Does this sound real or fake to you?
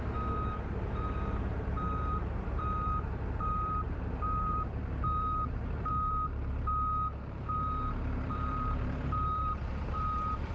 fake